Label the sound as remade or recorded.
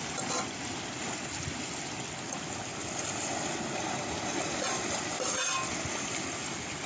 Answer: recorded